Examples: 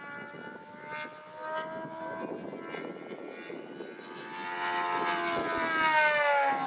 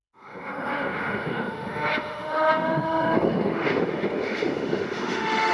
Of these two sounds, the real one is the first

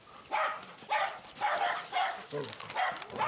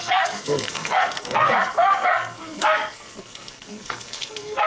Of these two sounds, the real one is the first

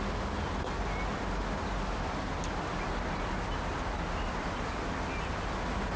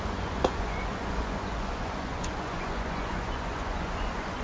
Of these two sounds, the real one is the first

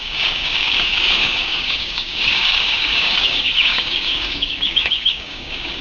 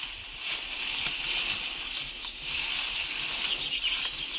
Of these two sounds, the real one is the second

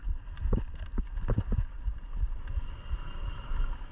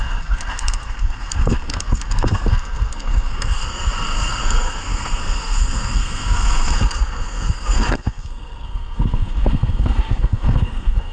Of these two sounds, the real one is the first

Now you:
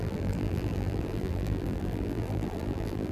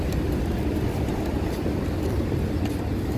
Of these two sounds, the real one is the second